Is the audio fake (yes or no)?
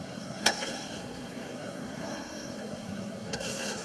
yes